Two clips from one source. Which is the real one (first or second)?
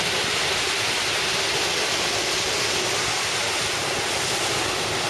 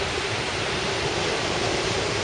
first